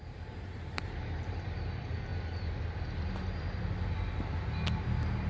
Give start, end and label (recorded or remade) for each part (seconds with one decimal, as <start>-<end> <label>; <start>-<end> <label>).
0.0-2.1 remade; 2.1-5.3 recorded